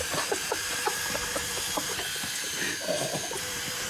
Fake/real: fake